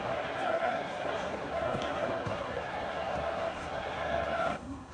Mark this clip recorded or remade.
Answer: remade